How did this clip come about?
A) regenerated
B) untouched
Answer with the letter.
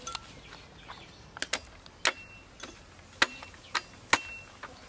B